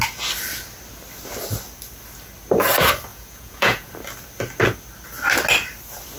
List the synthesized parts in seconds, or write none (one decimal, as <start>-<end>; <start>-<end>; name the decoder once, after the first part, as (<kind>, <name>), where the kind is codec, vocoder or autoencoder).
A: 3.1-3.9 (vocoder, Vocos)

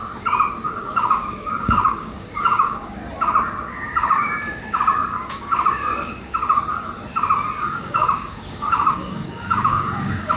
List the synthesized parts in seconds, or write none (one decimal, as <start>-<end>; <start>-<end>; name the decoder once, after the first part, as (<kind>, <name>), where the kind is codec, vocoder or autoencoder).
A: 0.7-3.0 (codec, DAC); 3.7-6.4; 7.6-10.4

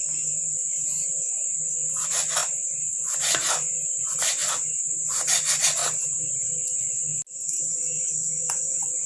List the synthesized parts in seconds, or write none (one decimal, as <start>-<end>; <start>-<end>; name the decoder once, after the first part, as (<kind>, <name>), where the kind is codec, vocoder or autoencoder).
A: 2.4-3.0 (vocoder, BigVGAN v2)

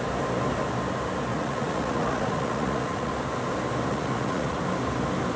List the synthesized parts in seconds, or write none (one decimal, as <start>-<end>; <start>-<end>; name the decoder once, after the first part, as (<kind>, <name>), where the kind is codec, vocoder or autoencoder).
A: 1.3-3.1 (vocoder, Vocos); 3.9-4.6